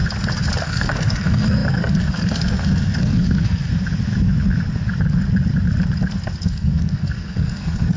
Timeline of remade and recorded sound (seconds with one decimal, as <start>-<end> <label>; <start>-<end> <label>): 0.0-0.6 recorded; 0.6-3.7 remade; 3.7-6.4 recorded; 6.4-8.0 remade